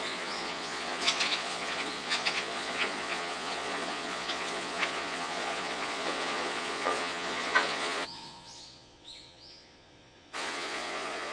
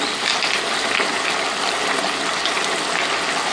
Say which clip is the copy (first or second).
first